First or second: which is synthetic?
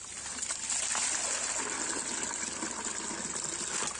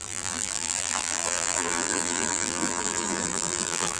second